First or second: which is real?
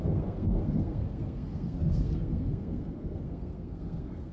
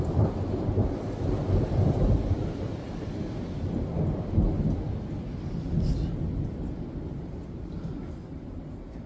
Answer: second